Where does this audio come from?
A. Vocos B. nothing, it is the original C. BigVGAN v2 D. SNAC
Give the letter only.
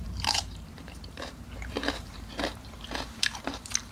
C